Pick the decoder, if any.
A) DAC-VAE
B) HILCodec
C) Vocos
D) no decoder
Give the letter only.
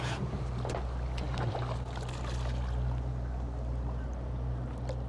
D